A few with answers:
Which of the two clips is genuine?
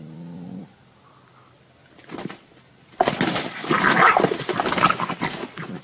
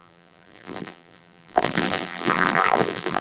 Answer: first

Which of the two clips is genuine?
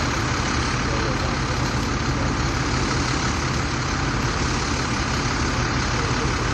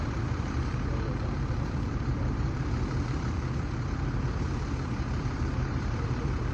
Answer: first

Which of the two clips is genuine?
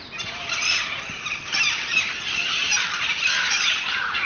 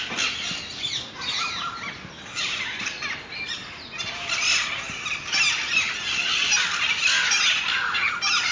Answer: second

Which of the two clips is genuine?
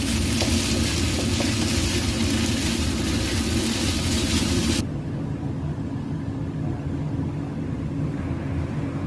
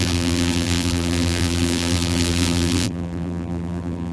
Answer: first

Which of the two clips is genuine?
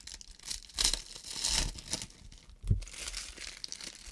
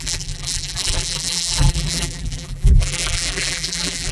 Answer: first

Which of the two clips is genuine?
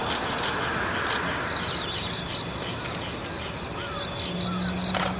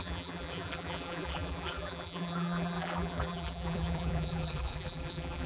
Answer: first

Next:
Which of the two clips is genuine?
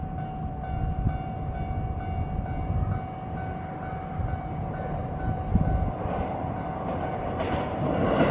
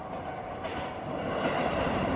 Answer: first